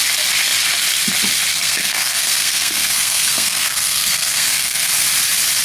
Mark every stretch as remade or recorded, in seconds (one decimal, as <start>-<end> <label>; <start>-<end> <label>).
0.0-1.5 recorded; 1.5-4.9 remade; 4.9-5.6 recorded